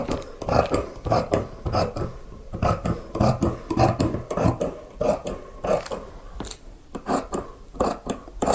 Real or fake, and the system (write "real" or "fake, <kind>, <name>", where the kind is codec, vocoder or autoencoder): fake, vocoder, BigVGAN v2